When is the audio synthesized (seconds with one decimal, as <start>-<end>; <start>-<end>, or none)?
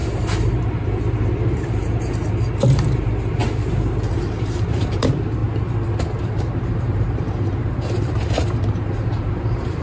0.0-3.4; 4.1-5.4; 6.2-9.8